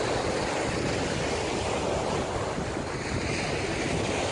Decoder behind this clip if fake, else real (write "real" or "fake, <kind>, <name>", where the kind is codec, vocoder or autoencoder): real